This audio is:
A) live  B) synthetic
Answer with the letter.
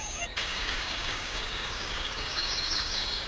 B